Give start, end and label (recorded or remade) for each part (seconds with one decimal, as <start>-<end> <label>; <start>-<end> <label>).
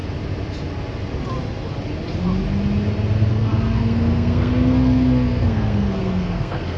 0.0-3.3 recorded; 3.3-6.8 remade